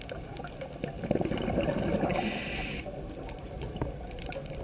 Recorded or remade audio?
recorded